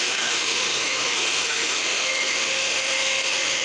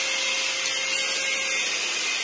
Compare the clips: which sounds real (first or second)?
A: second